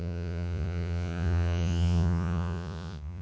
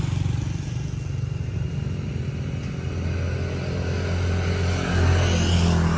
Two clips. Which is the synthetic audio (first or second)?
first